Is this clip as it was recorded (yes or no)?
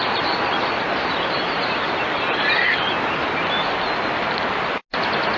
yes